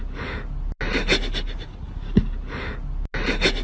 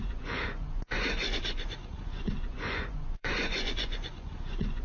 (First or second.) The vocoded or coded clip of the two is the second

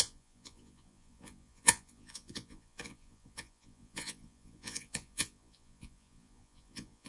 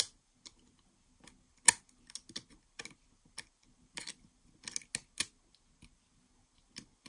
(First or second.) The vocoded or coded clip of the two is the first